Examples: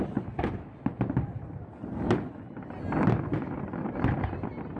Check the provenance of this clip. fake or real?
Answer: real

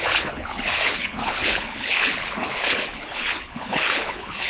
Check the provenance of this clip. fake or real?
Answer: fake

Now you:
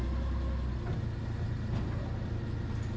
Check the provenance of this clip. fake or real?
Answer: real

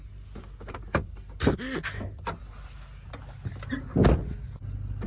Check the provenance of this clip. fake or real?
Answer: real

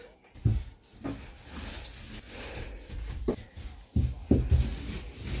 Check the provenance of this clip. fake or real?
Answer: real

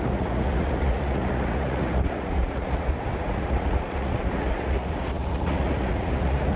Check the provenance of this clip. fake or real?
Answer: fake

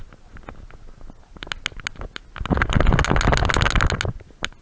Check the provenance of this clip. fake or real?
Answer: real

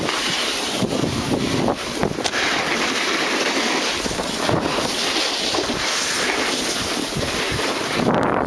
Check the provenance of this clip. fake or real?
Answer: real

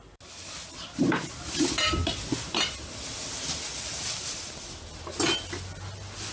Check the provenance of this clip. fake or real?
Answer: real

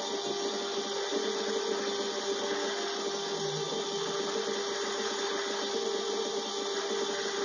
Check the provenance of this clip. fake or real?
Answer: real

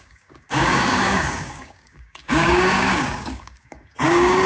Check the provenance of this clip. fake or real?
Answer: fake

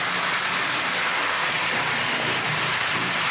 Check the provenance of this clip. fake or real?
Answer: real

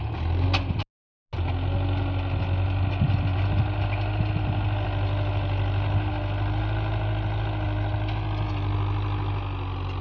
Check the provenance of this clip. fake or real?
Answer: real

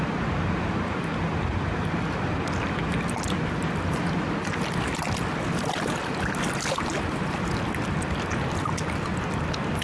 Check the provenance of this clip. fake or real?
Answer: real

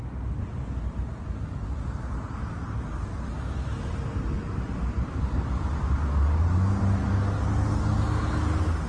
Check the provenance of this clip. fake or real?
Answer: real